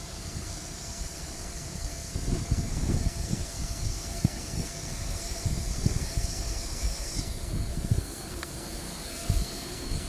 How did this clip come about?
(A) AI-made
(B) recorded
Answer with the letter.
A